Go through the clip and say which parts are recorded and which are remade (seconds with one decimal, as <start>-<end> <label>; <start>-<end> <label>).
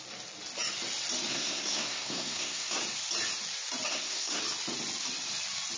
0.0-1.3 recorded; 1.3-2.8 remade; 2.8-3.9 recorded; 3.9-4.4 remade; 4.4-5.8 recorded